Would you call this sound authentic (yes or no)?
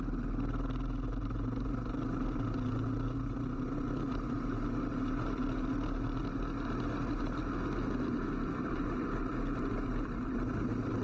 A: yes